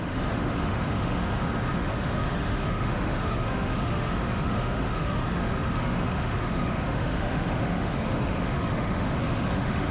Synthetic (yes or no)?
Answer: yes